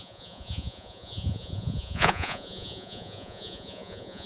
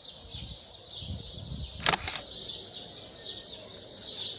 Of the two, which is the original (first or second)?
second